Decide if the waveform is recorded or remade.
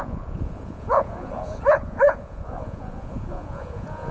remade